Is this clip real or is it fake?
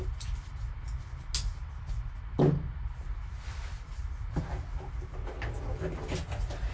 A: real